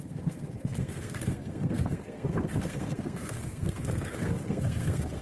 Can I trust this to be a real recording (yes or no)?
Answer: no